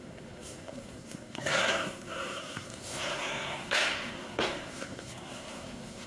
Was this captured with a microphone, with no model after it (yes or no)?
no